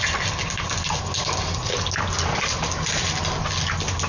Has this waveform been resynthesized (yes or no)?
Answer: no